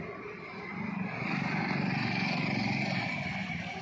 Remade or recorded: recorded